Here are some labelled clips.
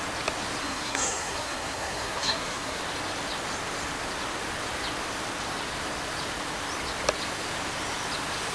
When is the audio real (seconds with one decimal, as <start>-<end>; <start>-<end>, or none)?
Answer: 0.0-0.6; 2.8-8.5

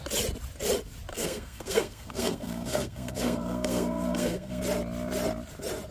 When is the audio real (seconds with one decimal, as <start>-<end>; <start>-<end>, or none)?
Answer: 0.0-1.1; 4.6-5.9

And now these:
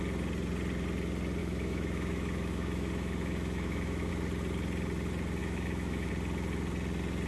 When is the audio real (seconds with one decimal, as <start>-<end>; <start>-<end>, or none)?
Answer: 0.0-1.4; 4.1-5.4; 6.1-7.3